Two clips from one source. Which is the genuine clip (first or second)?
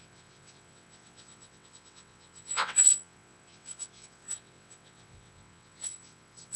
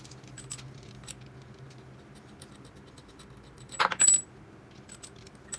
second